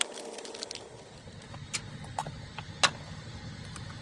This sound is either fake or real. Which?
real